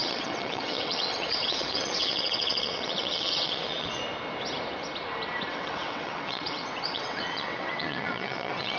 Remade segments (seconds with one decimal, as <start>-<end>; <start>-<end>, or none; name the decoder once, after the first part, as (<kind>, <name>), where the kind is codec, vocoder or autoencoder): 0.0-4.0 (vocoder, WaveNeXt); 5.5-8.8